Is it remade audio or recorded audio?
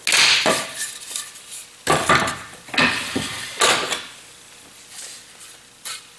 recorded